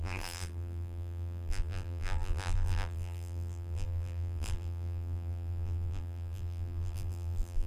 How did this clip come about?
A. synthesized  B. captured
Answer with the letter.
A